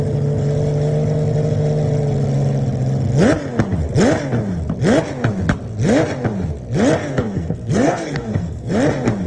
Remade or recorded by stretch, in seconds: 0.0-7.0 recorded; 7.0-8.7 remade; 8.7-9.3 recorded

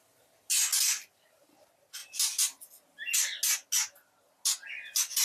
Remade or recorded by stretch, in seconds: 0.0-5.2 recorded

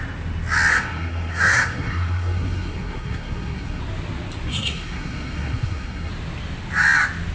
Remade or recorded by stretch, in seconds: 0.0-0.7 recorded; 0.7-3.8 remade; 3.8-4.5 recorded; 4.5-6.1 remade; 6.1-7.3 recorded

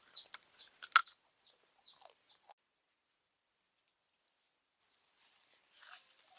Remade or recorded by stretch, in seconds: 0.0-6.4 recorded

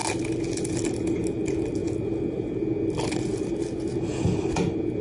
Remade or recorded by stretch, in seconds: 0.0-5.0 recorded

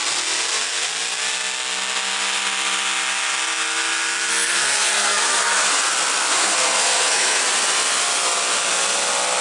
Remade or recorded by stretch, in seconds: 0.0-4.3 recorded; 4.3-5.8 remade; 5.8-6.3 recorded; 6.3-7.4 remade; 7.4-9.4 recorded